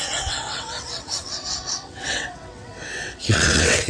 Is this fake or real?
fake